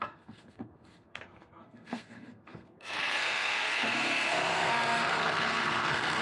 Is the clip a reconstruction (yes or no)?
yes